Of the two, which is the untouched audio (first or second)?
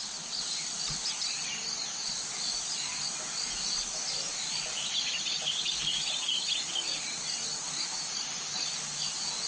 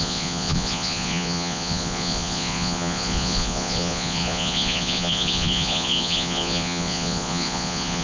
first